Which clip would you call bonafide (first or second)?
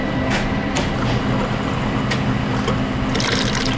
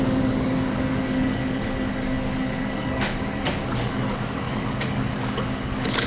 first